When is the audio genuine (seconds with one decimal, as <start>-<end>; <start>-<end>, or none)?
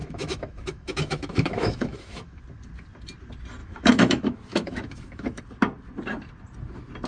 2.4-3.6; 5.4-7.1